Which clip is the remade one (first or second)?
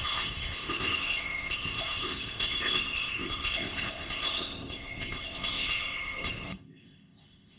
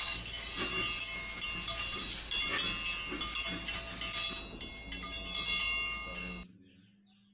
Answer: first